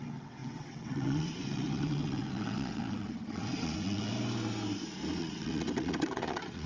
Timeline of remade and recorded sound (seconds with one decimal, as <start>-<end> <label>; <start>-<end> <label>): 0.0-4.1 remade; 4.1-5.2 recorded; 5.2-6.7 remade